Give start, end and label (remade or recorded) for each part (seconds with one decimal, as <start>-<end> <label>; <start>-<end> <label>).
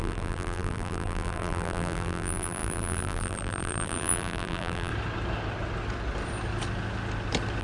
0.0-4.9 remade; 4.9-7.6 recorded